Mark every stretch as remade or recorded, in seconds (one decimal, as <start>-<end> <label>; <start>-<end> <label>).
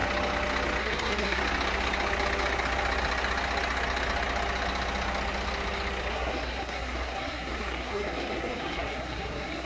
0.0-0.8 recorded; 0.8-1.4 remade; 1.4-6.1 recorded; 6.1-9.7 remade